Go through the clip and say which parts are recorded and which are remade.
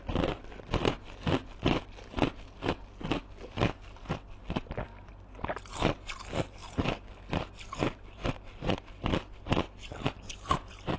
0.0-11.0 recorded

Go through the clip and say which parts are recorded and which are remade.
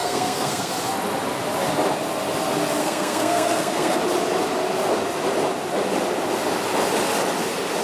0.0-0.7 remade; 0.7-2.8 recorded; 2.8-4.0 remade; 4.0-7.8 recorded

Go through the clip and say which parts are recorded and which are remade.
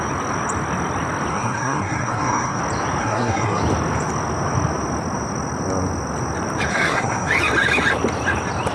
0.0-1.3 recorded; 1.3-2.6 remade; 2.6-3.0 recorded; 3.0-3.6 remade; 3.6-6.7 recorded; 6.7-7.3 remade; 7.3-8.7 recorded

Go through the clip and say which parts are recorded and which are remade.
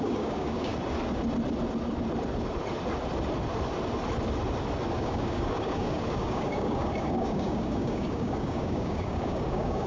0.0-0.7 remade; 0.7-4.9 recorded; 4.9-9.9 remade